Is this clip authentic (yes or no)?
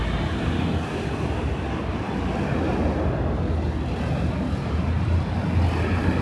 yes